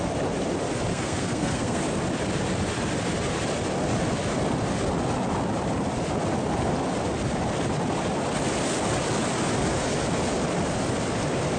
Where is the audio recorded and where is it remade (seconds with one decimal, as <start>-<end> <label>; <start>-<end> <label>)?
0.0-0.9 recorded; 0.9-1.8 remade; 1.8-11.6 recorded